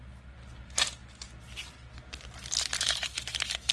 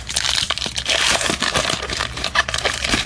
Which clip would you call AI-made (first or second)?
second